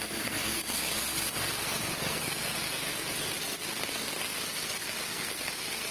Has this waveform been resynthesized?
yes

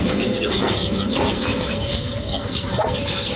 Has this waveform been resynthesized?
yes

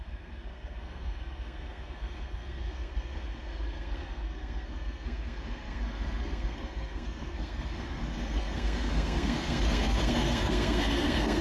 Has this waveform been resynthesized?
yes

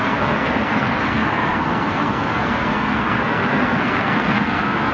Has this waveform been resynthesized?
yes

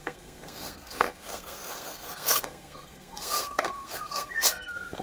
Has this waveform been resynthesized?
yes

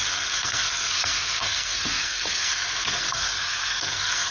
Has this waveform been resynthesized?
yes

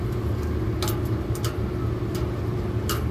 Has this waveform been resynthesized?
no